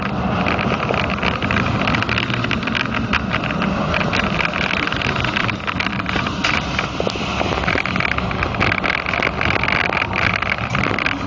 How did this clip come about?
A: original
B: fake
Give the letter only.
A